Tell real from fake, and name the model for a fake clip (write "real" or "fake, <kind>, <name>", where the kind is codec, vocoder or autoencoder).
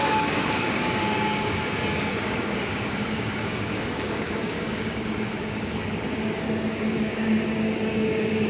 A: fake, codec, DAC